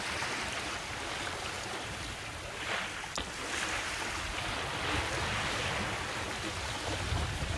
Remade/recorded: recorded